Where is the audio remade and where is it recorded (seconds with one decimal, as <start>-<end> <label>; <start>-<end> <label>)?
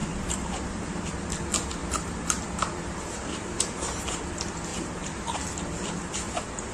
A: 0.0-1.3 remade; 1.3-1.8 recorded; 1.8-4.2 remade; 4.2-4.7 recorded; 4.7-6.7 remade